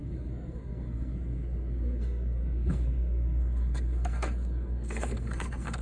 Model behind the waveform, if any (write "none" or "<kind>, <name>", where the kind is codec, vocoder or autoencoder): codec, SNAC